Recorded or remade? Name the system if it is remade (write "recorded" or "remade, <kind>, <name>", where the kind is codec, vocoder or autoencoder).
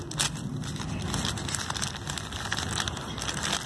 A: recorded